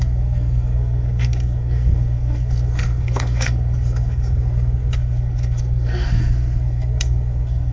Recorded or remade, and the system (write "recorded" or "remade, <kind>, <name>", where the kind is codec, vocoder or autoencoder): remade, codec, SNAC